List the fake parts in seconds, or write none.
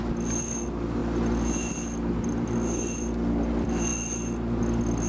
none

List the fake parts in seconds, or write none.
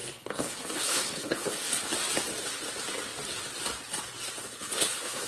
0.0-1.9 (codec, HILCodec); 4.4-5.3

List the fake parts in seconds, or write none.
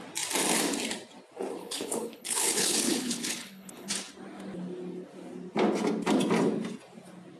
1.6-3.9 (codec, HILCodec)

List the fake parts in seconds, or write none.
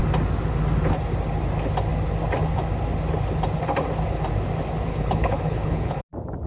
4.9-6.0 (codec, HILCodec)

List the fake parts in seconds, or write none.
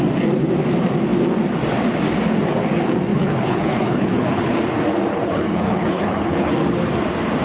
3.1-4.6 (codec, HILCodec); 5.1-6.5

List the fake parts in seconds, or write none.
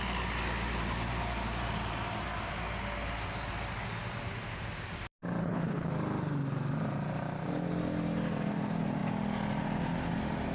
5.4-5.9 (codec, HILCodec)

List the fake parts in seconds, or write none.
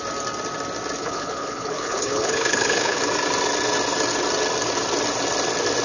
1.0-3.0 (codec, HILCodec)